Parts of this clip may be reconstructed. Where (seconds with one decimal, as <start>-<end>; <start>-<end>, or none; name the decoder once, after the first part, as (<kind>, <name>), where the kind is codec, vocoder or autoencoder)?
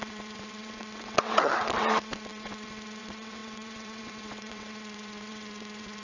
0.0-6.0 (vocoder, WaveNeXt)